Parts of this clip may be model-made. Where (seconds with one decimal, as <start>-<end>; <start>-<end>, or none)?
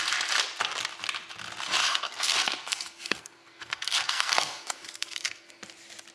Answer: 1.8-5.5